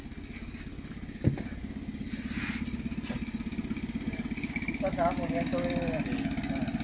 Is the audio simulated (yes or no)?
no